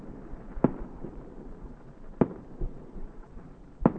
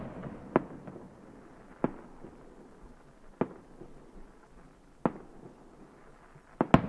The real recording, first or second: second